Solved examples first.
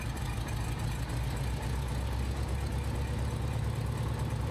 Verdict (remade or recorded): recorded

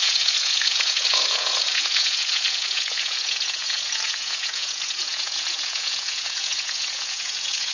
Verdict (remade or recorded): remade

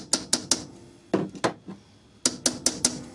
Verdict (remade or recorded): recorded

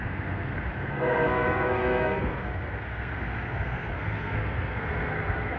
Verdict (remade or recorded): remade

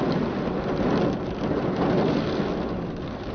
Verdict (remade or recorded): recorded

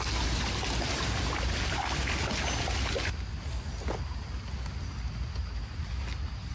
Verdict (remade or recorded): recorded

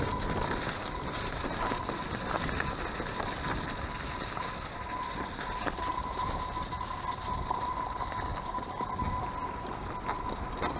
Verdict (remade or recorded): recorded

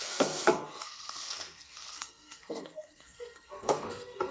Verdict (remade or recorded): remade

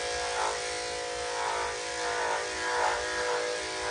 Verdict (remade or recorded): recorded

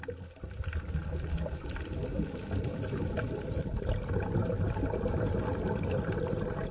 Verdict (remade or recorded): recorded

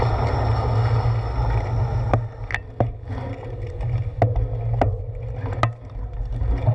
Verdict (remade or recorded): recorded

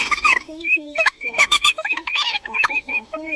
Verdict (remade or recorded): remade